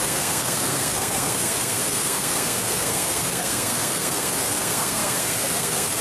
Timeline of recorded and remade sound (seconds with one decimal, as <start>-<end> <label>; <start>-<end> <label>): 0.0-6.0 remade